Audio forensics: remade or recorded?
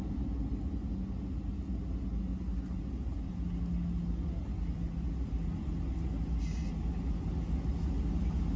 recorded